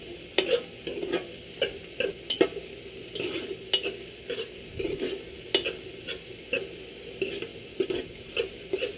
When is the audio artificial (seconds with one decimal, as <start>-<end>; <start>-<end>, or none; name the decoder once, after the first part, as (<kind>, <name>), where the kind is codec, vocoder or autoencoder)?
none